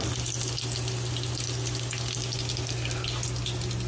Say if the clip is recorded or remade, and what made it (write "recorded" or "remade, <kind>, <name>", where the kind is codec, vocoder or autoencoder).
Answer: recorded